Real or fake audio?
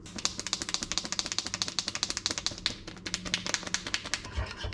real